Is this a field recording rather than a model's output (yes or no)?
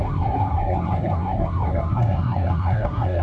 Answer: no